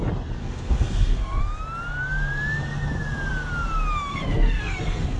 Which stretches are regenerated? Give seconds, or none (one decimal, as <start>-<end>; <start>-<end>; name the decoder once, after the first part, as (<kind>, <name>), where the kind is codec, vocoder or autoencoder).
0.4-1.4 (codec, SNAC); 4.1-5.2

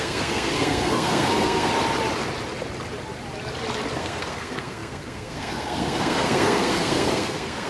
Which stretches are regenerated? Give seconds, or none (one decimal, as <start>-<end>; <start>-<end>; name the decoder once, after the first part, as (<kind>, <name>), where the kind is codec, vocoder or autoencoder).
0.0-1.7 (codec, SNAC); 3.9-7.7

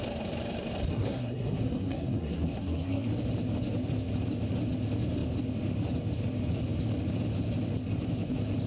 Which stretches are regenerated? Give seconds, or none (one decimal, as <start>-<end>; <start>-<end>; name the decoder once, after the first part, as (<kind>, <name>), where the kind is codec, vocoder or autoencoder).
0.9-3.1 (codec, SNAC)

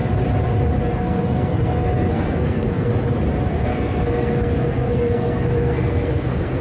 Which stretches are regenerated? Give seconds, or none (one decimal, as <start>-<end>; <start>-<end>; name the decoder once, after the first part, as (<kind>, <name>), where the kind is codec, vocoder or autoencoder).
0.8-2.9 (codec, SNAC); 3.5-6.6

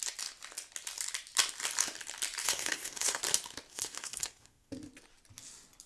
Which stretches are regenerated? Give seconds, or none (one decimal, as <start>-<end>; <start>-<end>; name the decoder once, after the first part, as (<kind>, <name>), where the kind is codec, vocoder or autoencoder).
2.4-3.2 (codec, SNAC); 3.7-4.7

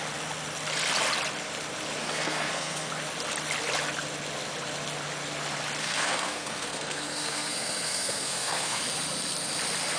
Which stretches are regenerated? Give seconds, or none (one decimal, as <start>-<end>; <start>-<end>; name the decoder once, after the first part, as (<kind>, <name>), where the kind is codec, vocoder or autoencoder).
2.0-2.9 (codec, SNAC); 5.8-8.8